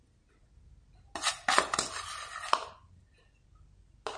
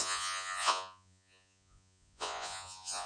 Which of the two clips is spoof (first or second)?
second